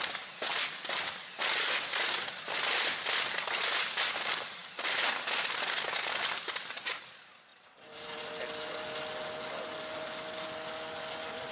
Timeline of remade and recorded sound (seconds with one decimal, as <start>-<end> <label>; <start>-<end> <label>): 0.0-0.5 recorded; 0.5-1.0 remade; 1.0-7.5 recorded; 7.5-8.3 remade; 8.3-11.5 recorded